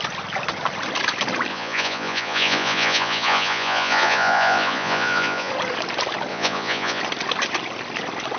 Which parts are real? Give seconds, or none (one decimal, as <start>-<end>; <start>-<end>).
0.0-1.5; 5.5-6.3; 7.0-8.4